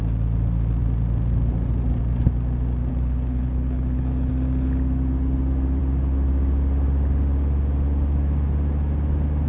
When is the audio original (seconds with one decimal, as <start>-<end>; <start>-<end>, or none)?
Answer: 0.0-2.9; 4.3-9.5